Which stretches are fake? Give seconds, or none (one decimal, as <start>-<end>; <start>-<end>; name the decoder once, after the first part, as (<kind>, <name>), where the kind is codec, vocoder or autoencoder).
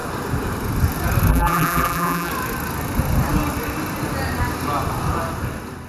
1.3-2.3 (vocoder, BigVGAN v2)